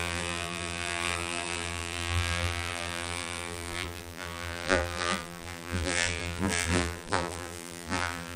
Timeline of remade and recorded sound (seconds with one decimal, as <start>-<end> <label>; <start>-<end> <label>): 0.0-8.4 remade